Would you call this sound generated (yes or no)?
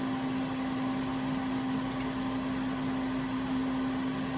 no